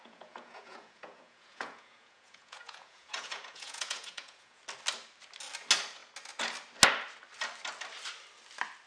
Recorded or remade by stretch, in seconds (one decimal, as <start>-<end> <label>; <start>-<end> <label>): 0.0-4.6 remade; 4.6-8.9 recorded